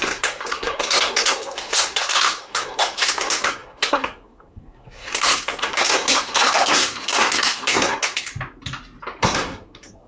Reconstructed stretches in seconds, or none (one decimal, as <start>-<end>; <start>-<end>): 0.0-8.3; 9.2-10.1